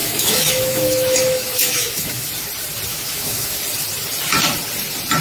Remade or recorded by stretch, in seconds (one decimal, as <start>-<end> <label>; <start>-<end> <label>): 0.0-2.3 remade; 2.3-2.9 recorded; 2.9-3.6 remade; 3.6-5.2 recorded